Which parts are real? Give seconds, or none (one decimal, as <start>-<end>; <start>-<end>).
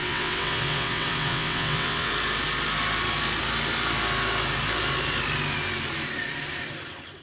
2.1-7.2